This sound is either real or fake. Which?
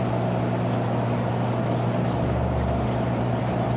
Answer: fake